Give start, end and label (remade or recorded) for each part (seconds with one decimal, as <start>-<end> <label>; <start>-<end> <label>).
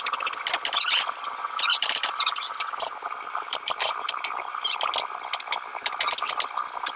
0.0-1.7 recorded; 1.7-4.9 remade; 4.9-5.7 recorded; 5.7-6.3 remade; 6.3-7.0 recorded